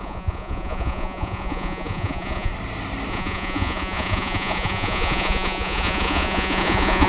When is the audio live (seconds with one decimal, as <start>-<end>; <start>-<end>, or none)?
2.5-3.1